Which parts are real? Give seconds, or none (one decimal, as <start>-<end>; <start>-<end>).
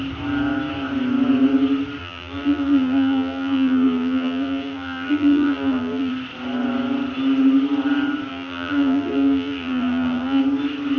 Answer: 0.0-2.0; 6.1-8.3; 10.4-11.0